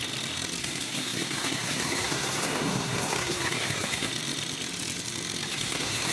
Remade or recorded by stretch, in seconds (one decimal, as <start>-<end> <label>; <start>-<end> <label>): 0.0-0.6 recorded; 0.6-4.1 remade; 4.1-5.5 recorded; 5.5-6.1 remade